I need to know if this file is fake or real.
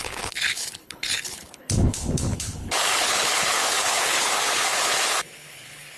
fake